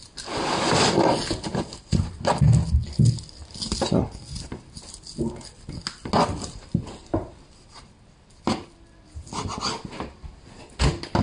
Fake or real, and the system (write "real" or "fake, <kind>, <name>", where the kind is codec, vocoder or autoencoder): real